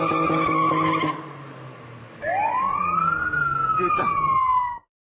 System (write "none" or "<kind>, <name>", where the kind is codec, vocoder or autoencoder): none